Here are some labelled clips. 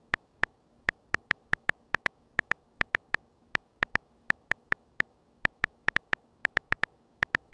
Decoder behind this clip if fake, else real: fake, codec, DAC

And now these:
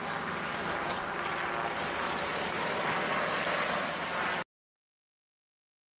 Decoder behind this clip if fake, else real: real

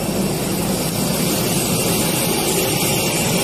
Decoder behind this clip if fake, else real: real